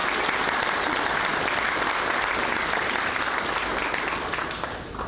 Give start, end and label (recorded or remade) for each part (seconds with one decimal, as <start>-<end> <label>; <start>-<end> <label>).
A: 0.0-5.1 recorded